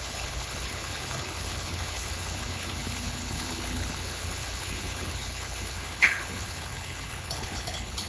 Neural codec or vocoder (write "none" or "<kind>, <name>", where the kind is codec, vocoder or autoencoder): codec, HILCodec